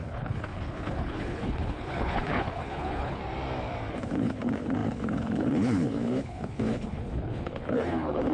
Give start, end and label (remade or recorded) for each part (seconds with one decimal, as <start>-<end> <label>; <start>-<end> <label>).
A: 0.0-3.2 remade; 3.2-3.9 recorded; 3.9-8.3 remade